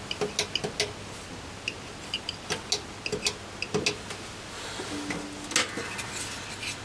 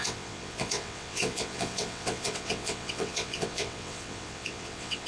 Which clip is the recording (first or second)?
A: first